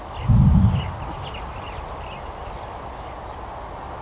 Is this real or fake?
real